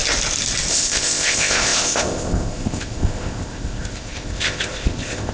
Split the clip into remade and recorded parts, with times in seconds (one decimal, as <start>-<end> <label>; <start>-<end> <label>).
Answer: 0.0-0.7 recorded; 0.7-5.3 remade